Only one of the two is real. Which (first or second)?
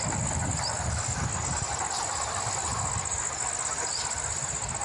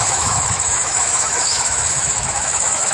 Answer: first